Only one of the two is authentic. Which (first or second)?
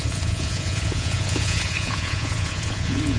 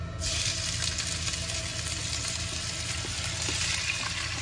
second